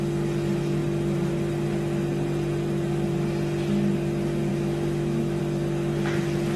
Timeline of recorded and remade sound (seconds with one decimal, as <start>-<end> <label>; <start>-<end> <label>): 0.0-4.5 recorded; 4.5-5.4 remade; 5.4-6.6 recorded